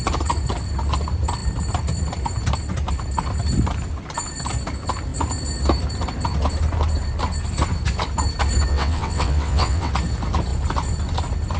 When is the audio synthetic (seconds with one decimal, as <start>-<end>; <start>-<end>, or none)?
8.7-9.9